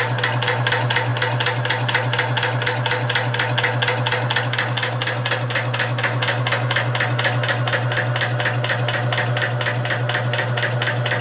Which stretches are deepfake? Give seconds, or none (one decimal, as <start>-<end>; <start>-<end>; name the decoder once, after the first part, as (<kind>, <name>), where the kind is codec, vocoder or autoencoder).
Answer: none

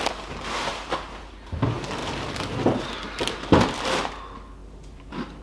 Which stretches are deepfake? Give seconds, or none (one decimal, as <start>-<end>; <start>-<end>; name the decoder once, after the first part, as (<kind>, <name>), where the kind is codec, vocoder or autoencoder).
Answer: 2.0-4.1 (vocoder, BigVGAN v2); 4.6-5.4

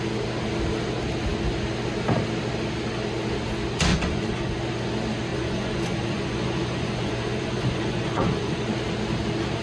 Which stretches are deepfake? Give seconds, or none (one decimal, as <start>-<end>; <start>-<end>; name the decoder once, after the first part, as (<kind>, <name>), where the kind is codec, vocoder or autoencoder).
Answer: 3.9-4.6 (vocoder, Vocos); 5.3-8.7

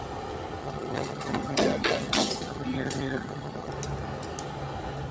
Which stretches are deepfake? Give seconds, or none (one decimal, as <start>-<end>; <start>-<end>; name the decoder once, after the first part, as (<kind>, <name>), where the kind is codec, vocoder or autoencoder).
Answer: 0.6-3.7 (vocoder, HiFi-GAN)

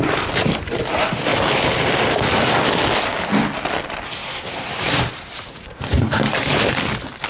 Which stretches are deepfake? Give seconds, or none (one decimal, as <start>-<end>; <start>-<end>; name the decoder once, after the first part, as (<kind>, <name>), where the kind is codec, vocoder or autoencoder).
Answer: 4.2-6.7 (vocoder, BigVGAN v2)

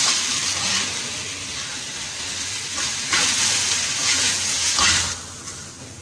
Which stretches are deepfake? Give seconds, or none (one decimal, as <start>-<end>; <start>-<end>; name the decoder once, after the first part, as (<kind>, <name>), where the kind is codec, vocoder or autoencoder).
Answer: 4.0-4.8 (vocoder, Vocos)